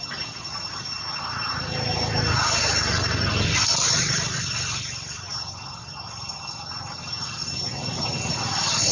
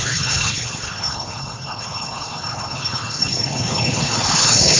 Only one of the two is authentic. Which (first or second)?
first